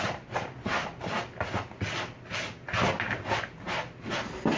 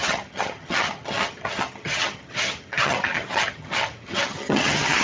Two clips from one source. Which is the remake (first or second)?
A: second